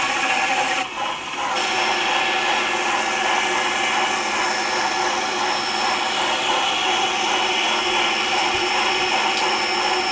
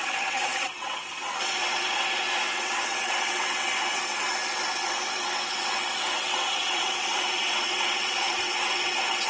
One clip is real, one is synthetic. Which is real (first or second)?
first